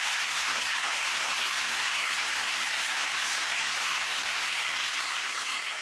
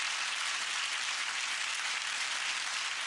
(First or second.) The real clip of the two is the second